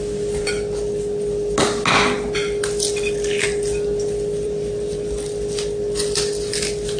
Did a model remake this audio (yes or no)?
no